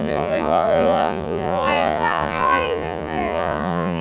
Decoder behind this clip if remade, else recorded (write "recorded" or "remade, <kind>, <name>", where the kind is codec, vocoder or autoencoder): remade, vocoder, Vocos